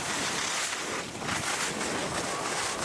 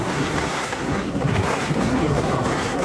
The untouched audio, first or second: first